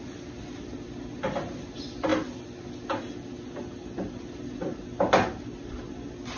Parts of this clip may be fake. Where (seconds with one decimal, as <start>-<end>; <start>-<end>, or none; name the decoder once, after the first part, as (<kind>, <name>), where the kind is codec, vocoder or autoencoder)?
none